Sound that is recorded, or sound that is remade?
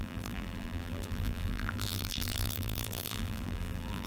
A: remade